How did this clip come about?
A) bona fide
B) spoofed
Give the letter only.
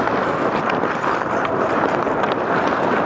A